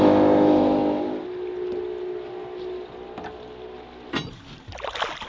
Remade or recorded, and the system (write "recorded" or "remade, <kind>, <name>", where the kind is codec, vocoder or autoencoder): recorded